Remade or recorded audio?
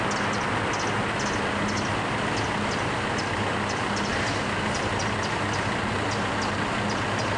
recorded